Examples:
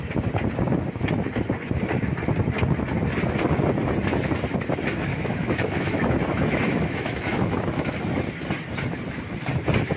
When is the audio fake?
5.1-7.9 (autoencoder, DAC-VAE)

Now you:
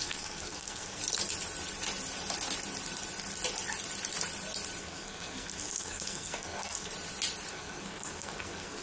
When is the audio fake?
0.0-1.0 (codec, SNAC); 4.8-6.9; 7.5-8.8

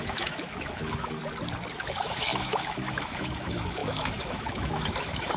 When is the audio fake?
0.0-1.2 (autoencoder, DAC-VAE); 1.8-5.4

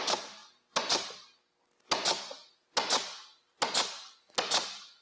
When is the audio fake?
none